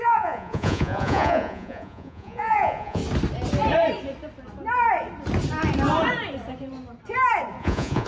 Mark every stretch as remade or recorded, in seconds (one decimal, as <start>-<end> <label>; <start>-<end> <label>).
0.0-3.0 remade; 3.0-7.6 recorded; 7.6-8.1 remade